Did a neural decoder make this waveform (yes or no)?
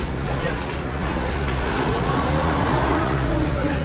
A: yes